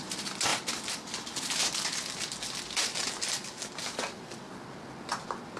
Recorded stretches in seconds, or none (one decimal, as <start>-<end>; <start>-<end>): 0.0-5.6